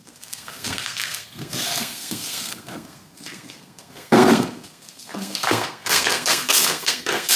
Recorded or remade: remade